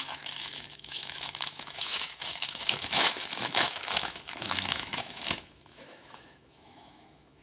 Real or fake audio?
fake